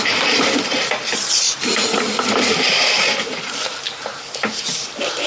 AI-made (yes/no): no